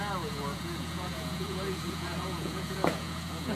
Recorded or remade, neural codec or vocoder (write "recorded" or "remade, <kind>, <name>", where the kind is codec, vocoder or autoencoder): remade, vocoder, Vocos